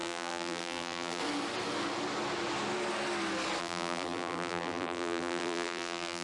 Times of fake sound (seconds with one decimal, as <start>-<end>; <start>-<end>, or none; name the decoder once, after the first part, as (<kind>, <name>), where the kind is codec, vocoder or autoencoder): 0.0-1.2 (vocoder, BigVGAN v2); 3.6-6.2